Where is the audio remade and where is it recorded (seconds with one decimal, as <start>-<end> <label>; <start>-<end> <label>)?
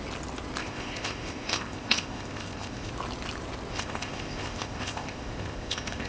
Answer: 0.0-0.6 recorded; 0.6-2.9 remade; 2.9-3.7 recorded; 3.7-6.1 remade